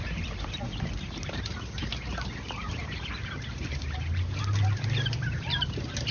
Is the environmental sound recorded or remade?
remade